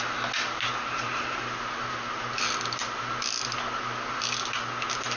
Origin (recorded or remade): recorded